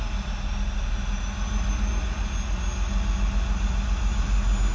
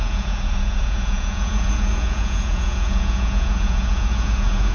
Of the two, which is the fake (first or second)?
second